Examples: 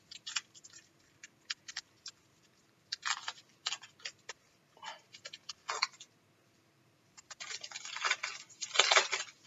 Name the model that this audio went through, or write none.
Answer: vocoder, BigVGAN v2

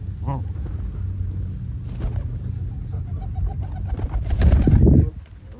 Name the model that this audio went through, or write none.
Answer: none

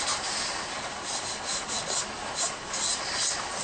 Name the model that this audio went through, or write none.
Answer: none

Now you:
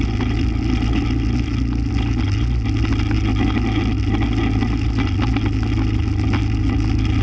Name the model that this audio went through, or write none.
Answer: none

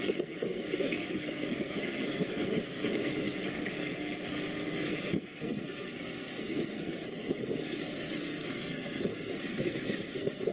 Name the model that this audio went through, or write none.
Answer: codec, SNAC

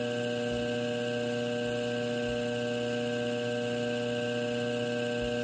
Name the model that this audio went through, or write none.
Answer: none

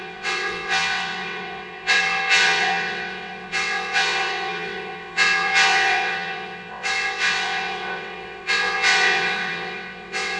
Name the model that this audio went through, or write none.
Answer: vocoder, WaveNeXt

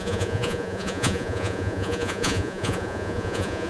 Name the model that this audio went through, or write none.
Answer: vocoder, Vocos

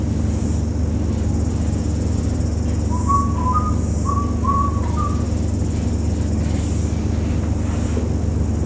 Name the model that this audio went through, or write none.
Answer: none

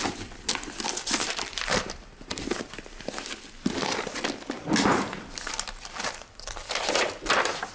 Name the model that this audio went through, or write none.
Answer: vocoder, BigVGAN v2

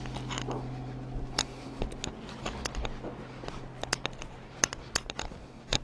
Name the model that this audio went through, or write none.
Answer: none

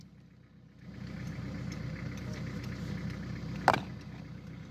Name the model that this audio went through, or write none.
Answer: none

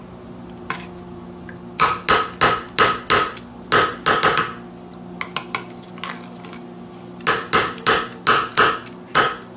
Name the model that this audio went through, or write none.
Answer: none